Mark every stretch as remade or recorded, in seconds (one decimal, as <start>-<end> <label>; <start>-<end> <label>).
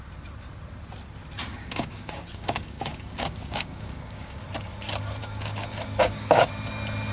0.0-1.5 recorded; 1.5-4.4 remade; 4.4-5.2 recorded; 5.2-6.5 remade; 6.5-7.1 recorded